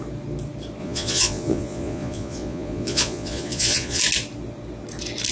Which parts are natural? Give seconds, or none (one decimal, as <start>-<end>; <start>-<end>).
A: 0.0-0.8; 4.0-5.3